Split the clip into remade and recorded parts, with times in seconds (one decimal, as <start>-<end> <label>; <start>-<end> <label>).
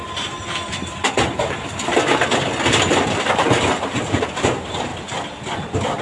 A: 0.0-1.9 remade; 1.9-4.1 recorded; 4.1-4.9 remade; 4.9-6.0 recorded